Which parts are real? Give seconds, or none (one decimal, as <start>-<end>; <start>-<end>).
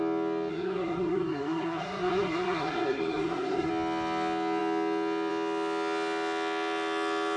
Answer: 0.0-0.5; 3.7-7.4